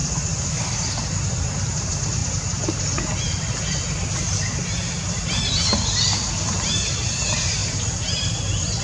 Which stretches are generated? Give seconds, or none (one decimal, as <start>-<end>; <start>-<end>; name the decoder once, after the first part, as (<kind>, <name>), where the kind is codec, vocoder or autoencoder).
none